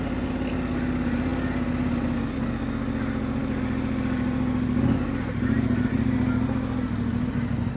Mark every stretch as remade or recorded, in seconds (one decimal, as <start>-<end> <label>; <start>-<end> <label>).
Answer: 0.0-7.8 recorded

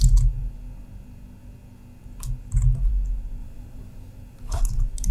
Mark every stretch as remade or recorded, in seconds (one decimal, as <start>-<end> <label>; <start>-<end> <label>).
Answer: 0.0-3.4 recorded; 3.4-4.6 remade; 4.6-5.1 recorded

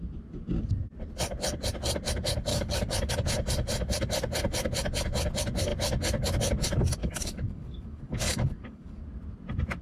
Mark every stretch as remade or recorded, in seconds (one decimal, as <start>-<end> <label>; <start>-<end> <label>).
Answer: 0.0-2.5 recorded; 2.5-3.1 remade; 3.1-7.0 recorded; 7.0-9.0 remade; 9.0-9.8 recorded

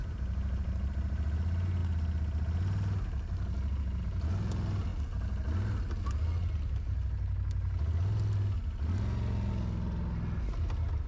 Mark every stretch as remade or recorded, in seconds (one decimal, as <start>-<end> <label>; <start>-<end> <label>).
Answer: 0.0-0.9 remade; 0.9-11.1 recorded

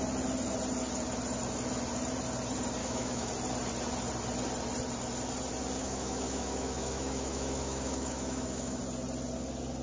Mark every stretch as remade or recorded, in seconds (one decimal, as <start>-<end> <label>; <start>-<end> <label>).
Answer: 0.0-2.8 recorded; 2.8-3.3 remade; 3.3-5.8 recorded; 5.8-8.8 remade; 8.8-9.8 recorded